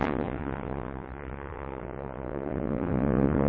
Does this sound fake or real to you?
fake